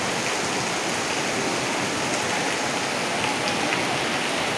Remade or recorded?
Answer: recorded